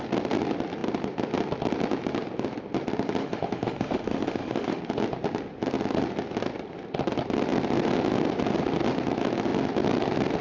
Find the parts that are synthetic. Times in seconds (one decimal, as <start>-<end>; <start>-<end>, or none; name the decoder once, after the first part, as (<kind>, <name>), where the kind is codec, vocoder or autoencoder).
3.2-4.8 (autoencoder, DAC-VAE)